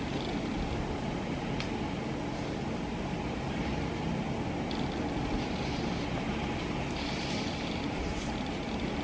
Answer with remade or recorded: recorded